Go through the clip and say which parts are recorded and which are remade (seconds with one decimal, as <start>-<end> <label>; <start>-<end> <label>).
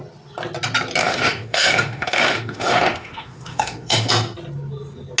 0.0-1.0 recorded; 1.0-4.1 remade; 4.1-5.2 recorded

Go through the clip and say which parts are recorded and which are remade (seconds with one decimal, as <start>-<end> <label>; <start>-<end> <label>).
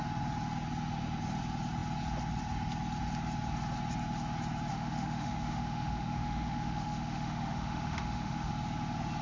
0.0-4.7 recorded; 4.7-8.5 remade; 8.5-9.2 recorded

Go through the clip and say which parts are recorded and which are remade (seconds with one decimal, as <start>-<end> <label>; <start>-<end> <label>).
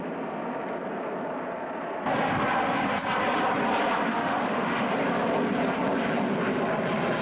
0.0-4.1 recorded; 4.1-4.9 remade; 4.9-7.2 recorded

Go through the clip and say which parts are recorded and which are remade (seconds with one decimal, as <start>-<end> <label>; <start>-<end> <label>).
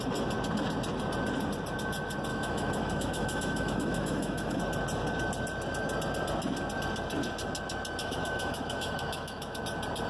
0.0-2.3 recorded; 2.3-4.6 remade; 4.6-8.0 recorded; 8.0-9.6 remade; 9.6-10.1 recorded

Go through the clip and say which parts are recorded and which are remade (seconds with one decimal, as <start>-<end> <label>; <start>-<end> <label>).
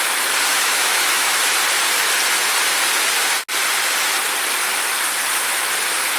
0.0-0.5 recorded; 0.5-1.4 remade; 1.4-6.2 recorded